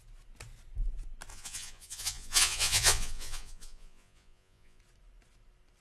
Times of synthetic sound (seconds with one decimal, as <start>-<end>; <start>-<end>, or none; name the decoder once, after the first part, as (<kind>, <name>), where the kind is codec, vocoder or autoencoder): 1.3-4.8 (vocoder, Vocos)